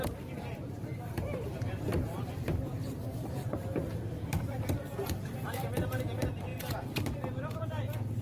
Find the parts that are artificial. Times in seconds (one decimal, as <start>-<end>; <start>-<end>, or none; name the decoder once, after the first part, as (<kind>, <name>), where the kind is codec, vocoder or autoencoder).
0.0-6.5 (vocoder, BigVGAN v2); 7.6-8.2